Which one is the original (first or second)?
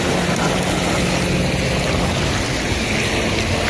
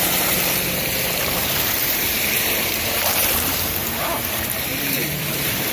first